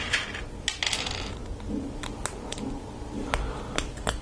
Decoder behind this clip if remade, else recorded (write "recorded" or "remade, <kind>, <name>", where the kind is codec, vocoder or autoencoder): recorded